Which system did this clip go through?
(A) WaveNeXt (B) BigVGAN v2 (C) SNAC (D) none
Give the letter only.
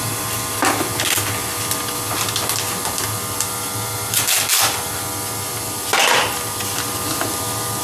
D